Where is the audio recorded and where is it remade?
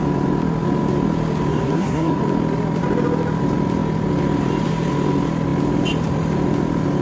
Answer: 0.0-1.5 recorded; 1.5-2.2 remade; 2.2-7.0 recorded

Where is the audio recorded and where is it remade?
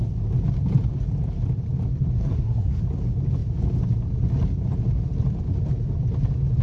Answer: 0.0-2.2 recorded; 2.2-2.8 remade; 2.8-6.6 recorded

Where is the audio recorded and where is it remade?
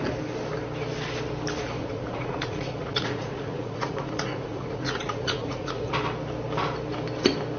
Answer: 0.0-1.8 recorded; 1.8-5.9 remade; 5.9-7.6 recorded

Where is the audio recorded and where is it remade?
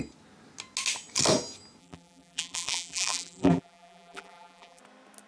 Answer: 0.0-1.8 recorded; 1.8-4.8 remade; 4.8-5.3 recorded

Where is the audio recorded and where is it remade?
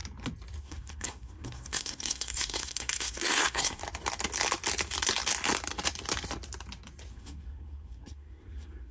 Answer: 0.0-0.6 recorded; 0.6-3.8 remade; 3.8-7.1 recorded; 7.1-8.9 remade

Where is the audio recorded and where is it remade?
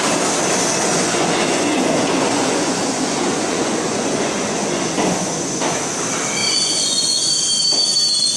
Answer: 0.0-0.9 recorded; 0.9-5.7 remade; 5.7-6.4 recorded; 6.4-7.3 remade; 7.3-8.4 recorded